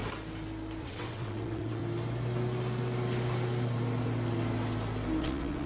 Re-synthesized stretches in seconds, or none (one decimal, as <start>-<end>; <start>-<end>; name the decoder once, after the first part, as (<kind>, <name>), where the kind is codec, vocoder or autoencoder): 0.8-1.8 (vocoder, WaveNeXt); 5.2-5.7